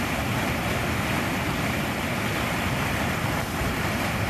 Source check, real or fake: real